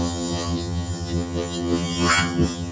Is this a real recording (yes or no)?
no